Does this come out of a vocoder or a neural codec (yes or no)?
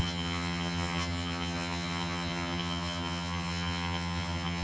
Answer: yes